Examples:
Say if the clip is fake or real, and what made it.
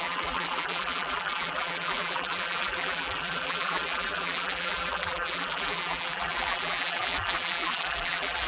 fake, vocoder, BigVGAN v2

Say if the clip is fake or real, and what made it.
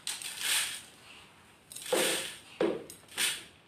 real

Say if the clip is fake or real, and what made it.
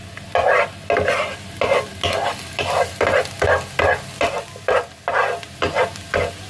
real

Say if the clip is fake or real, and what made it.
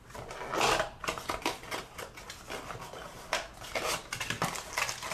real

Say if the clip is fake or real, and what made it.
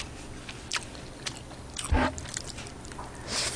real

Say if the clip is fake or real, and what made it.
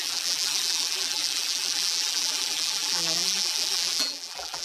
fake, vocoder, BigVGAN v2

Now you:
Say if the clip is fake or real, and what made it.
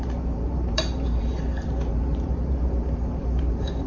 fake, vocoder, BigVGAN v2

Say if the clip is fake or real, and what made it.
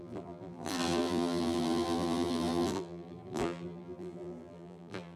fake, vocoder, BigVGAN v2